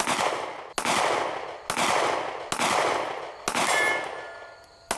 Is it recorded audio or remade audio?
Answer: recorded